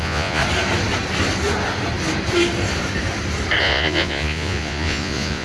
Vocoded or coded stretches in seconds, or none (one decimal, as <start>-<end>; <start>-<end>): 0.0-0.4; 3.6-5.4